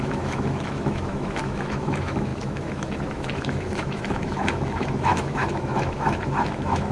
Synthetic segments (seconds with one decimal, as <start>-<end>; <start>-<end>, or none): 0.0-6.9